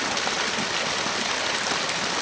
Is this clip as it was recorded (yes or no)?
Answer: yes